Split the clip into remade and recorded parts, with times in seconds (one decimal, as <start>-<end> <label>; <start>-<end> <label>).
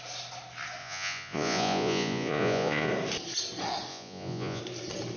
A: 0.0-0.8 recorded; 0.8-2.9 remade; 2.9-3.9 recorded; 3.9-4.6 remade; 4.6-5.2 recorded